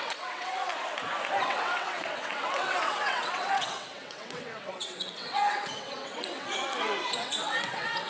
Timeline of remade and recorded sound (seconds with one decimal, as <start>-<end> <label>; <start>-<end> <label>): 0.0-0.7 remade; 0.7-1.4 recorded; 1.4-8.1 remade